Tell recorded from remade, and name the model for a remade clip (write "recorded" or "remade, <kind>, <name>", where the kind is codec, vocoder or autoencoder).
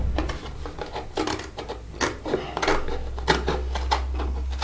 recorded